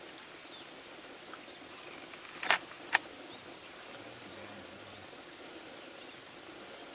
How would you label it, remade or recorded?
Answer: recorded